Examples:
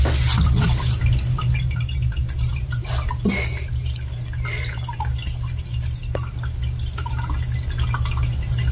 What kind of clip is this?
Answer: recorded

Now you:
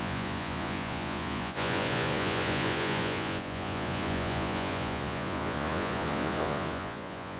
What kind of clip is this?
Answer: remade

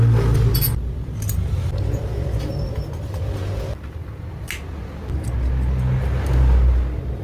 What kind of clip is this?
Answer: recorded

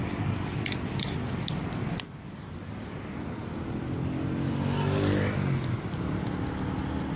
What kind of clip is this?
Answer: recorded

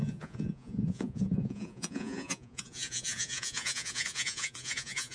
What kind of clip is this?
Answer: remade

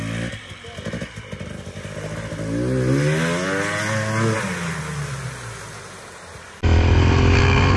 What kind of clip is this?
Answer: recorded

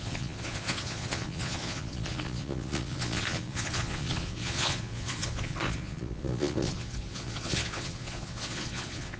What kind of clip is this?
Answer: remade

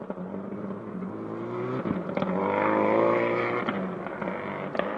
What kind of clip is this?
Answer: recorded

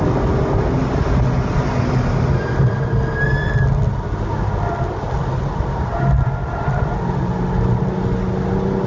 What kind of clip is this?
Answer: recorded